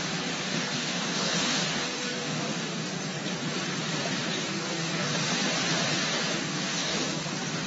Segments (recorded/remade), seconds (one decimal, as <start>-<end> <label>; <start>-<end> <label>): 0.0-0.5 recorded; 0.5-2.9 remade; 2.9-4.3 recorded; 4.3-5.1 remade; 5.1-6.4 recorded; 6.4-7.2 remade; 7.2-7.7 recorded